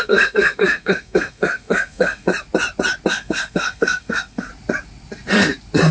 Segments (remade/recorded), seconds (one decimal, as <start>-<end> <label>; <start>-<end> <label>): 0.0-2.3 remade; 2.3-3.1 recorded; 3.1-4.5 remade; 4.5-5.9 recorded